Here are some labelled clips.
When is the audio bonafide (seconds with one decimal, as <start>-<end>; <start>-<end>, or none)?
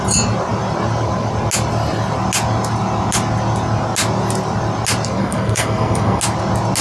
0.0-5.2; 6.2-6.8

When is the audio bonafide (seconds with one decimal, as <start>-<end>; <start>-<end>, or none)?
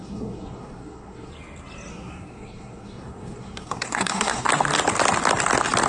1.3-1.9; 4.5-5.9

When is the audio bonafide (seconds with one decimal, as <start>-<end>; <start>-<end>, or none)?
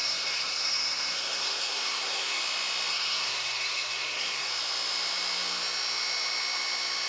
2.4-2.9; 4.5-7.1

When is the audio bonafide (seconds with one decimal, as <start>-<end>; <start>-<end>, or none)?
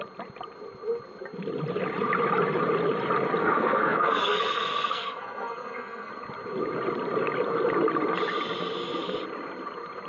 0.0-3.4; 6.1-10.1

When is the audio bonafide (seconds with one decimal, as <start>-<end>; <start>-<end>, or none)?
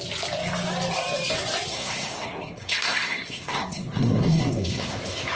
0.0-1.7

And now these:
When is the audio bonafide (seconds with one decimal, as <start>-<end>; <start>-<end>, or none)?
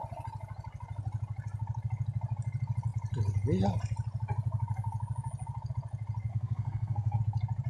0.0-6.3; 7.2-7.7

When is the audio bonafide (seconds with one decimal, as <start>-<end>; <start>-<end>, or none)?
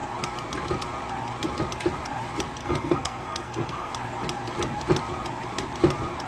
0.0-2.6; 3.9-6.3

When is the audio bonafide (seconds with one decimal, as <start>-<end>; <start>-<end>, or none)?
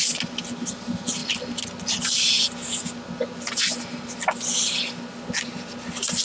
0.0-6.2